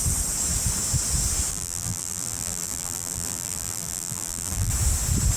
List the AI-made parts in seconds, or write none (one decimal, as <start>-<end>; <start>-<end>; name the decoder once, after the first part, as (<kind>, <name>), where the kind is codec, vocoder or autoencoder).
1.5-4.7 (vocoder, BigVGAN v2)